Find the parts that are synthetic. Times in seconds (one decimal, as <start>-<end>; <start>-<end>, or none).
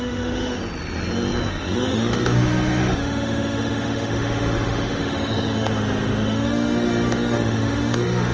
0.0-0.6; 1.5-8.3